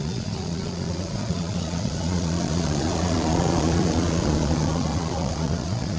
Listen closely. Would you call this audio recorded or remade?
remade